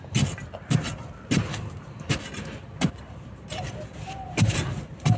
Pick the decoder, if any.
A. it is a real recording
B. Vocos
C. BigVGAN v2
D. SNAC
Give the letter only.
A